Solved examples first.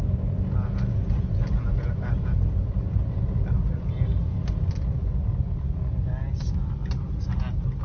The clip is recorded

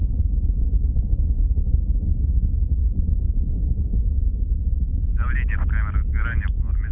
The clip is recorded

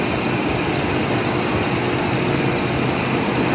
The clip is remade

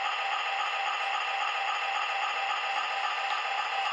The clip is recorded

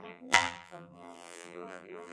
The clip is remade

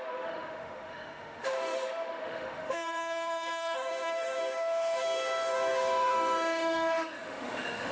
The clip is remade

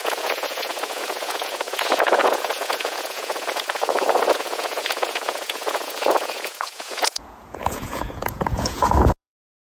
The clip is remade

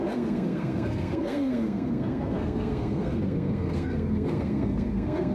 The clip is remade